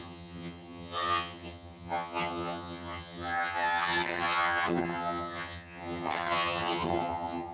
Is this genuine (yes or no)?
no